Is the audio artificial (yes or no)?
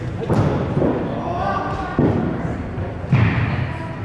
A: no